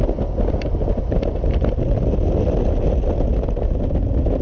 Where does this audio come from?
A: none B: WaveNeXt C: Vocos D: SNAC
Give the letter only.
A